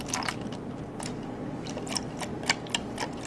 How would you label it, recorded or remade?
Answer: recorded